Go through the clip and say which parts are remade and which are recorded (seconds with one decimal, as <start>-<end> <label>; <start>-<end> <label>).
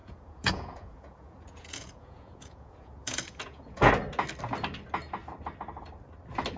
0.0-3.9 remade; 3.9-6.6 recorded